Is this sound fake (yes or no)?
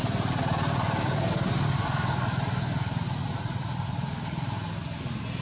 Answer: no